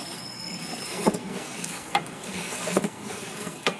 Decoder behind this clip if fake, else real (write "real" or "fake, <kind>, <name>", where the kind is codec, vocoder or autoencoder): fake, codec, SNAC